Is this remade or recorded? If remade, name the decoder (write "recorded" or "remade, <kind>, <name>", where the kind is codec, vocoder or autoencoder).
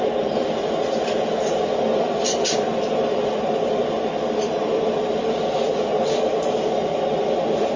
recorded